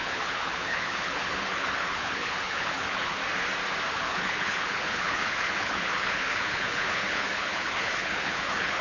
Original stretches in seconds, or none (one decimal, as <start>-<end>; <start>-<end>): 3.2-3.9